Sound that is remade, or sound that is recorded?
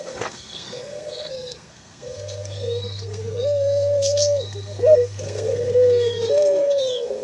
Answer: remade